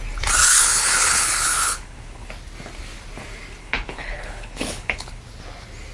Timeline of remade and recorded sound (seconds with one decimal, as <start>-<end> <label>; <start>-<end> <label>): 0.0-0.4 recorded; 0.4-2.3 remade; 2.3-3.6 recorded; 3.6-5.2 remade; 5.2-5.9 recorded